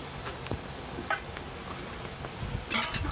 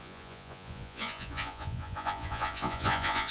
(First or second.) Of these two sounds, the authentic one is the first